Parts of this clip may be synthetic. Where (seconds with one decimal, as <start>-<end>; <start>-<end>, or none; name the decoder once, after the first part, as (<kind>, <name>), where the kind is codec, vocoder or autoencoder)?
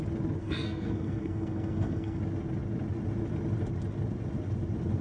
0.4-2.2 (codec, SNAC)